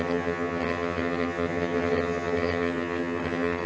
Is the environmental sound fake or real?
fake